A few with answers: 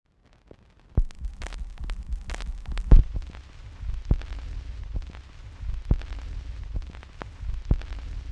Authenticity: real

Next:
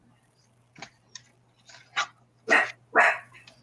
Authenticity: real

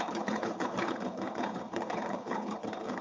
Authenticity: fake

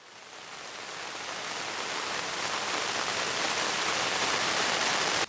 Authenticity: real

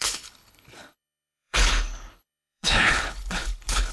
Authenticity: fake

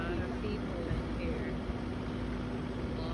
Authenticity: real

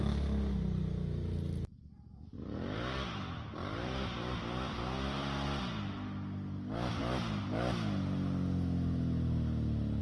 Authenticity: real